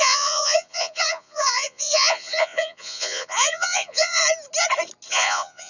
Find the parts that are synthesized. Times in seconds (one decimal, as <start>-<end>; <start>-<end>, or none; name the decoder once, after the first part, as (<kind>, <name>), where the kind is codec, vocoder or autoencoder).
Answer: 0.0-4.2 (vocoder, Vocos); 5.1-5.7